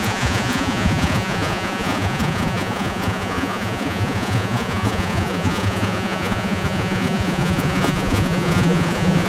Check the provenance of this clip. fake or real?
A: fake